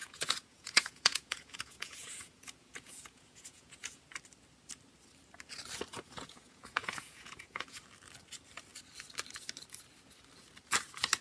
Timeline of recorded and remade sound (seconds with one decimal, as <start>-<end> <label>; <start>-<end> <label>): 0.0-4.0 remade; 4.0-5.9 recorded; 5.9-7.8 remade; 7.8-11.2 recorded